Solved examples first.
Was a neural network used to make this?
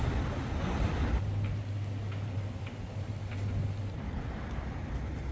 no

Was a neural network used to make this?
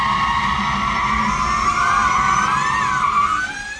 no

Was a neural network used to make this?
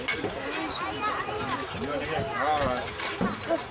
no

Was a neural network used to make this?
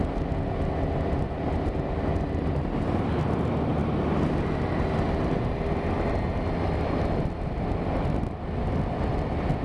no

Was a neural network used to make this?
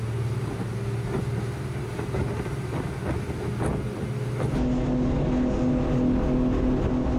no